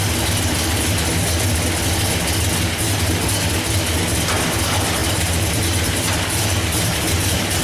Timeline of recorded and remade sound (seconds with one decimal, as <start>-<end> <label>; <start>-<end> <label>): 0.0-5.0 recorded; 5.0-7.6 remade